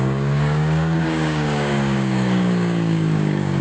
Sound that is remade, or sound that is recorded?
remade